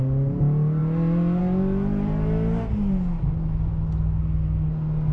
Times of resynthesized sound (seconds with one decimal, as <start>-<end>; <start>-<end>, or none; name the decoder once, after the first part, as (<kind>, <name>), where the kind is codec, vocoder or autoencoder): none